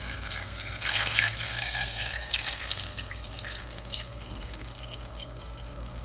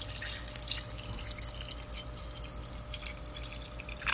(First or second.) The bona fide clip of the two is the second